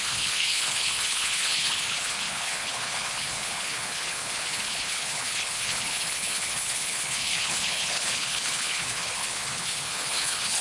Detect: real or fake fake